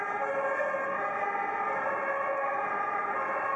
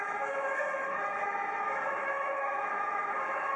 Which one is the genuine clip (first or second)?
first